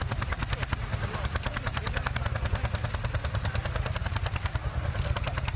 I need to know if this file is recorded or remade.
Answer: recorded